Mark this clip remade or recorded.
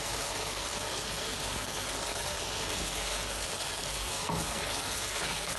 remade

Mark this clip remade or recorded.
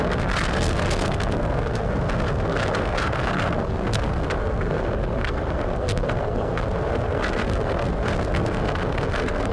remade